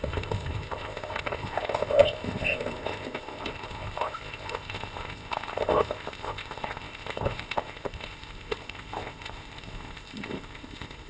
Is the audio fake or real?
fake